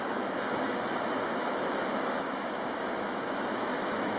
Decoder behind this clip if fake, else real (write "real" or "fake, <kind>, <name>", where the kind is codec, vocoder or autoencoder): fake, autoencoder, DAC-VAE